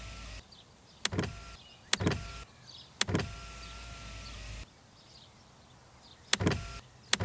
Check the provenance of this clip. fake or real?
real